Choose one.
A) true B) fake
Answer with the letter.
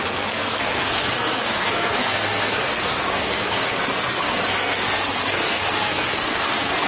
B